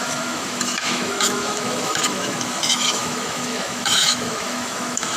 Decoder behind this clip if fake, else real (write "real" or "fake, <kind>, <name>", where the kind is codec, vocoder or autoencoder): fake, autoencoder, DAC-VAE